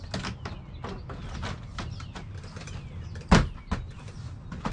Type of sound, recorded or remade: recorded